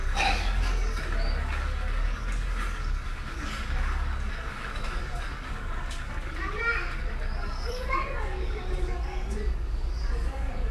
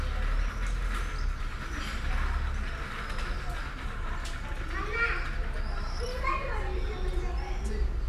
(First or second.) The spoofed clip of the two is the first